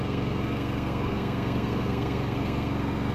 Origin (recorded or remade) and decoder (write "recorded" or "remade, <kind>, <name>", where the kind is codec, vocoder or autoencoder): remade, codec, SNAC